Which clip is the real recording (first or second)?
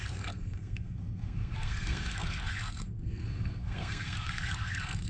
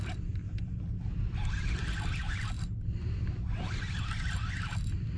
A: second